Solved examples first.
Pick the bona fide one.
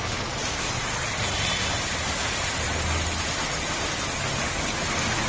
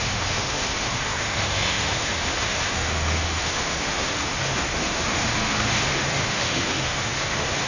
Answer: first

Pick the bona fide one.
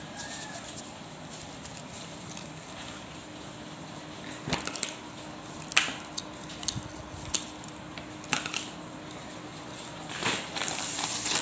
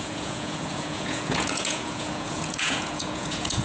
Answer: first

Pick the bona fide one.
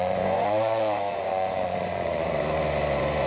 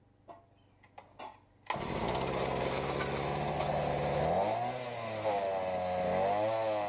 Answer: second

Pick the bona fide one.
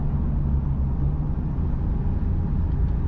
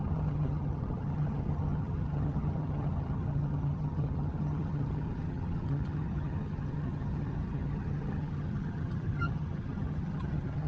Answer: first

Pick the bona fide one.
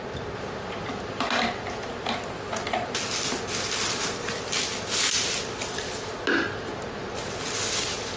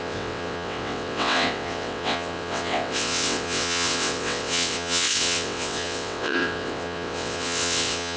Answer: first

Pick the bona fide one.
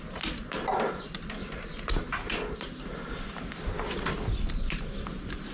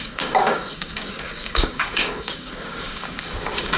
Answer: first